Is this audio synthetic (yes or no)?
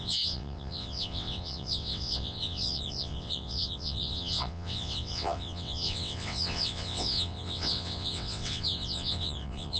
yes